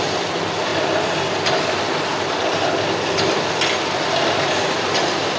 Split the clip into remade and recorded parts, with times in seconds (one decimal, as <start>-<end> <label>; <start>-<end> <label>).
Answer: 0.0-5.4 recorded